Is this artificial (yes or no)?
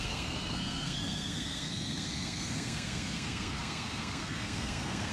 yes